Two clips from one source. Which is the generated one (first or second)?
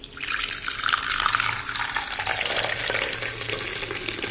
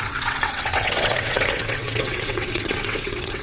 second